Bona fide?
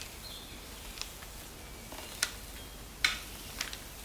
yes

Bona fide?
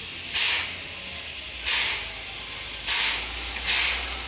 yes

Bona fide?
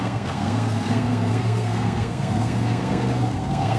no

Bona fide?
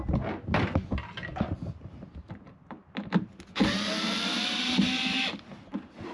yes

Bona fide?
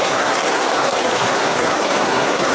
no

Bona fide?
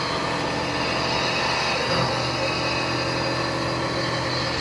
yes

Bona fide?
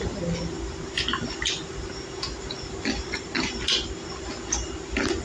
yes